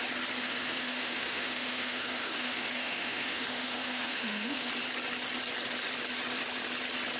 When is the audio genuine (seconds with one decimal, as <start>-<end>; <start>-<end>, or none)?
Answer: 0.0-0.4; 4.7-7.2